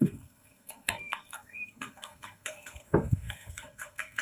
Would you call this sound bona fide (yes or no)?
no